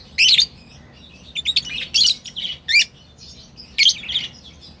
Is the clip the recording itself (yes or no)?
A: yes